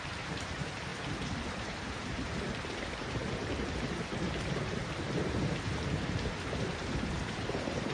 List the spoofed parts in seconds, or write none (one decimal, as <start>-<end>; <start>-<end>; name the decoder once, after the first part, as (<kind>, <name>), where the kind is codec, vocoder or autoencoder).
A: 0.0-0.9 (vocoder, BigVGAN v2); 1.5-3.4; 4.4-7.9